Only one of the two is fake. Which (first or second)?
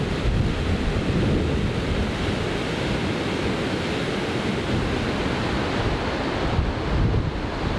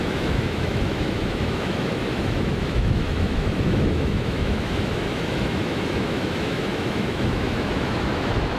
second